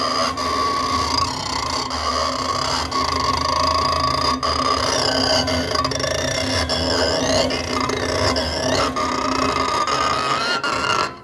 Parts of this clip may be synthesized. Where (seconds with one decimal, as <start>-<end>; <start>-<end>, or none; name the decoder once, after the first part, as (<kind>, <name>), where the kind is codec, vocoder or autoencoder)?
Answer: none